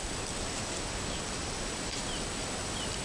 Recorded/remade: recorded